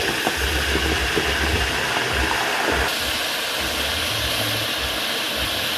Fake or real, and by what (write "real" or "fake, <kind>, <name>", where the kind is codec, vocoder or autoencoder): real